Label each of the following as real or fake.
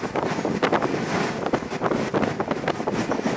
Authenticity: real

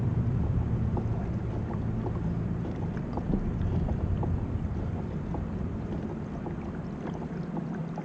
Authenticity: fake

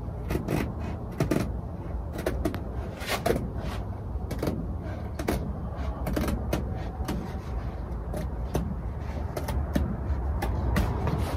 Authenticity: real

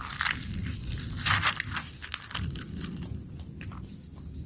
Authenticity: real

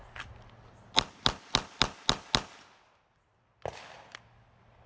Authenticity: real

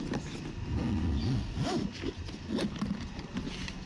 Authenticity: real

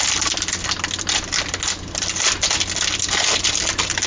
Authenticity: real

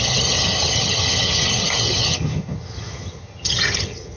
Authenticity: fake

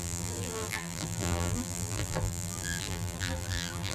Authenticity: fake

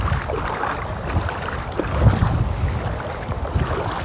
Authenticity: real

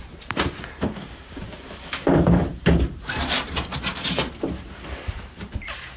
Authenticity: fake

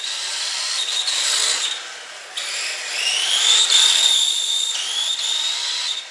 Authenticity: fake